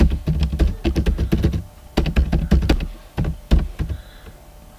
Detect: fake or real real